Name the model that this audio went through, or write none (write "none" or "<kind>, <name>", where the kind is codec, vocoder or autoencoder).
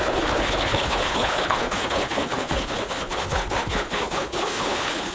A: codec, HILCodec